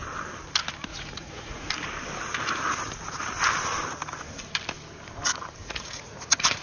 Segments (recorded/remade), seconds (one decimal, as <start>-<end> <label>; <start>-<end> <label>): 0.0-0.9 recorded; 0.9-1.7 remade; 1.7-5.6 recorded; 5.6-6.6 remade